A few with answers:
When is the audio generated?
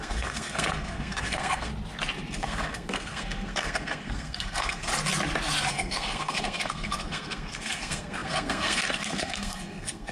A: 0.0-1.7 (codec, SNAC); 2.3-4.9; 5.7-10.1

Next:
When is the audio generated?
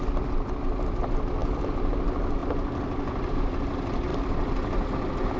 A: 4.1-4.9 (vocoder, BigVGAN v2)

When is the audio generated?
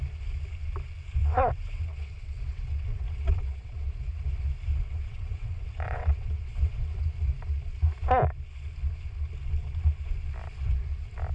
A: 1.2-3.9 (vocoder, WaveNeXt); 4.7-7.0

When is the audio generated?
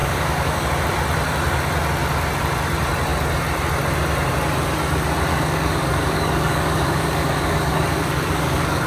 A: 0.0-0.7 (codec, DAC); 5.3-8.9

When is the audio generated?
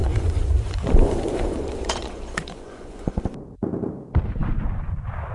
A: 0.0-3.2 (vocoder, Vocos)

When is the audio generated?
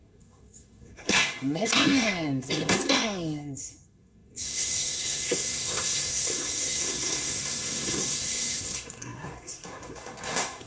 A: 0.0-10.7 (codec, SNAC)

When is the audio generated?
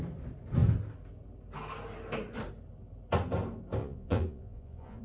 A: 3.8-5.0 (vocoder, Vocos)